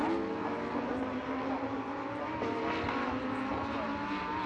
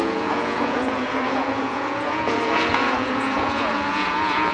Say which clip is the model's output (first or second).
second